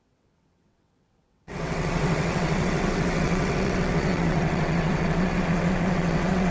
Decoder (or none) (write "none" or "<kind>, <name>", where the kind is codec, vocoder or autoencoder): vocoder, WaveNeXt